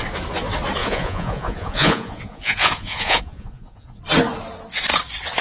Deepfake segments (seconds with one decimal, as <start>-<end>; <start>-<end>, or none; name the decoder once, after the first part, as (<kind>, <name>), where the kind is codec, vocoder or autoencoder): 0.8-4.0 (vocoder, Vocos)